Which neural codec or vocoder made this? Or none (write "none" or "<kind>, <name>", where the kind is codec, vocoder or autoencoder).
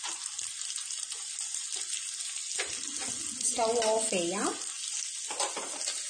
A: none